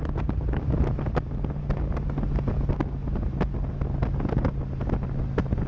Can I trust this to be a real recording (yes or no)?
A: yes